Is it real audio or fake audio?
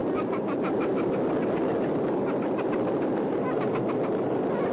real